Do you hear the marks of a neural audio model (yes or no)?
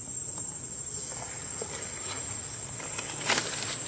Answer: no